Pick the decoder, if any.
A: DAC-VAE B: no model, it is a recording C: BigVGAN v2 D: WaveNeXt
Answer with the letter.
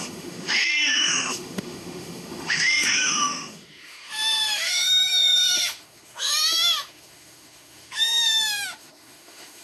A